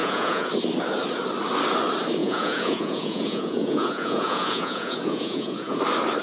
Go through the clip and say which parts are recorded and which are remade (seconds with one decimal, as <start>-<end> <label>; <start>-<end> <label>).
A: 0.0-0.5 remade; 0.5-2.2 recorded; 2.2-5.8 remade; 5.8-6.2 recorded